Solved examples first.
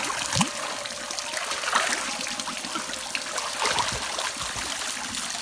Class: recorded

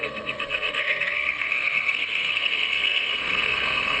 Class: remade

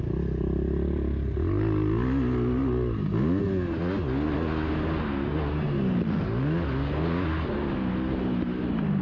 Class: recorded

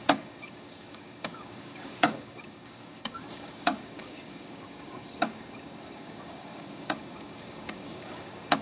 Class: remade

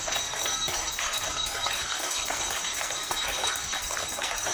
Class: remade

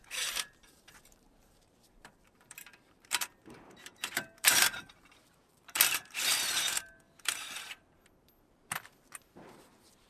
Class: remade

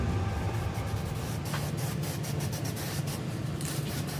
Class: recorded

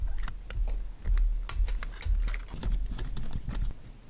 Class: recorded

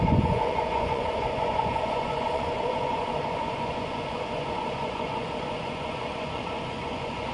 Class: remade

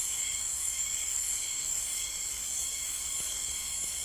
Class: remade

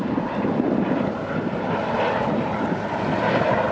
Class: remade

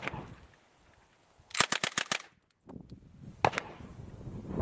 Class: recorded